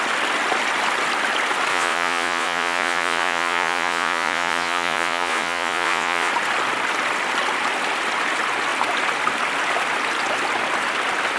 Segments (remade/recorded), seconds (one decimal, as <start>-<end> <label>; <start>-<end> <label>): 0.0-1.7 recorded; 1.7-6.3 remade; 6.3-11.4 recorded